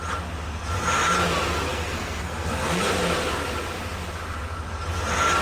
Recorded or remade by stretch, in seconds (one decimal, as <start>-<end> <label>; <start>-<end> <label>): 0.0-1.7 recorded; 1.7-2.9 remade; 2.9-5.4 recorded